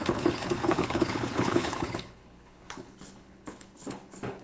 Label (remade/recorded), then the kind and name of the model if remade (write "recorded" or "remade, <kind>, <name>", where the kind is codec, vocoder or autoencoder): remade, codec, HILCodec